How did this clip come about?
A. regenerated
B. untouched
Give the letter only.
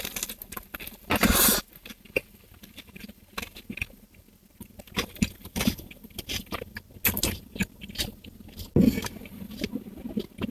B